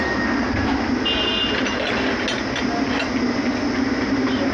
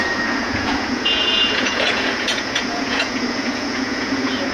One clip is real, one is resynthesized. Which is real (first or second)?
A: first